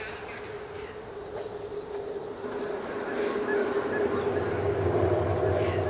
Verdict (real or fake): real